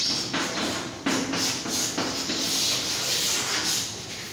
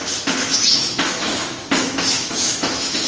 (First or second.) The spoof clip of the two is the second